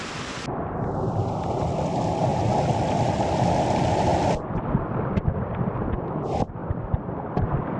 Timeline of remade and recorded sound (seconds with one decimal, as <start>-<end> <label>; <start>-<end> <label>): 0.0-7.8 recorded